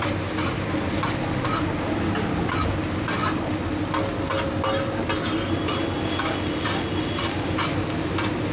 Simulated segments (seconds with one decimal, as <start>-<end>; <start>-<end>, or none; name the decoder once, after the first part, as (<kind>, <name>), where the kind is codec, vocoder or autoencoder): none

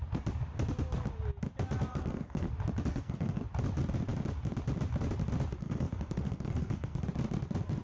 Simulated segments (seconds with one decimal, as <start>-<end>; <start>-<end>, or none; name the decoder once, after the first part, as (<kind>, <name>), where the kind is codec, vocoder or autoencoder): 1.9-2.5 (codec, SNAC); 2.9-3.4; 5.6-7.0